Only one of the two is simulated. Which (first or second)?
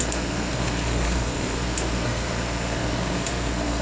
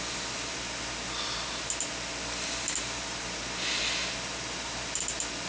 first